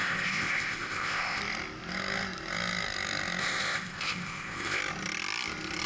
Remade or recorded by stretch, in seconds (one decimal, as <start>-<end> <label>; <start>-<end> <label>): 0.0-1.4 remade; 1.4-3.4 recorded; 3.4-4.8 remade; 4.8-5.9 recorded